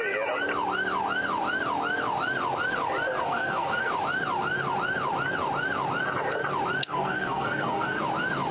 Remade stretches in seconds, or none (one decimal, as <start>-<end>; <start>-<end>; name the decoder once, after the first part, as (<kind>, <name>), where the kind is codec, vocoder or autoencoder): 3.2-3.9 (codec, SNAC); 6.8-8.0